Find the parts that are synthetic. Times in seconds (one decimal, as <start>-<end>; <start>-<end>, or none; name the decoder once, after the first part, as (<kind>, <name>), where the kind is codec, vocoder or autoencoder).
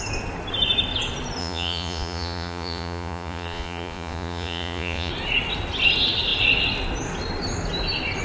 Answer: 1.4-5.1 (vocoder, Vocos)